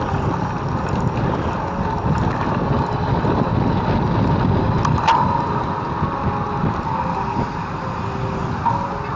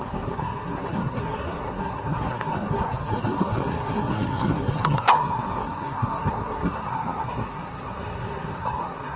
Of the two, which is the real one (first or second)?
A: first